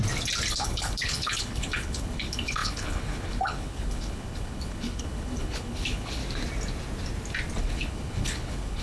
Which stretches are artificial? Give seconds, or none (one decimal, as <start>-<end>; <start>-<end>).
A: 0.5-6.2; 7.6-8.8